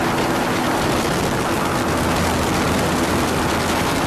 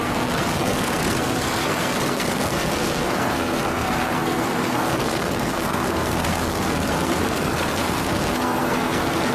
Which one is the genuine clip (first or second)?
first